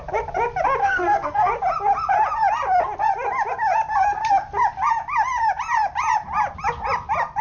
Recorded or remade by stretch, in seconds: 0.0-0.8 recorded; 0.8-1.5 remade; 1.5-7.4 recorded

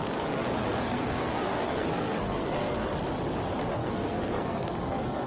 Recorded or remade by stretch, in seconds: 0.0-3.0 remade; 3.0-3.8 recorded; 3.8-5.3 remade

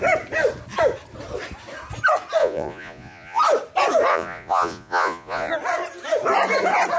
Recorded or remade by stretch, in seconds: 0.0-2.4 recorded; 2.4-3.4 remade; 3.4-4.1 recorded; 4.1-5.5 remade; 5.5-7.0 recorded